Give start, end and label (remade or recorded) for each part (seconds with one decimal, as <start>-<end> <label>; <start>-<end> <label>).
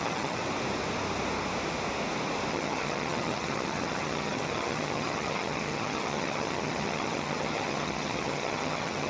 0.0-0.4 remade; 0.4-2.5 recorded; 2.5-9.1 remade